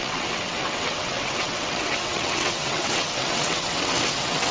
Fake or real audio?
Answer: fake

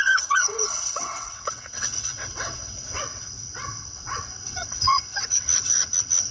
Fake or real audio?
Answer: fake